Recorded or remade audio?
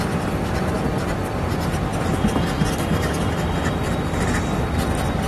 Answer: recorded